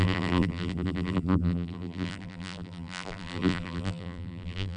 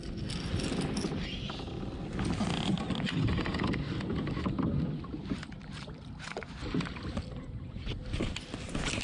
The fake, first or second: first